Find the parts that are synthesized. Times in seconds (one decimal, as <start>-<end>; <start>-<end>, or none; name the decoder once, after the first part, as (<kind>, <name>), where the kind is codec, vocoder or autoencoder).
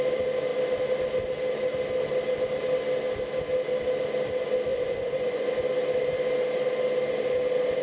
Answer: 4.7-5.5 (vocoder, Vocos)